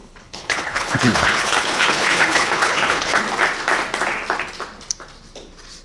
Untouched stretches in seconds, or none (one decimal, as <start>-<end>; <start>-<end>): 3.2-5.8